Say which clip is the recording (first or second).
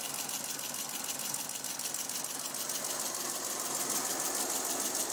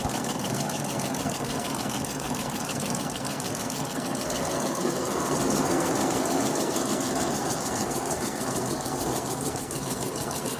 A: first